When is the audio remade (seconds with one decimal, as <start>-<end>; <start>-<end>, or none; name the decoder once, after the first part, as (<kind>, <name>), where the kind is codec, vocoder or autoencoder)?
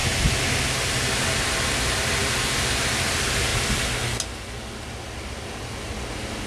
none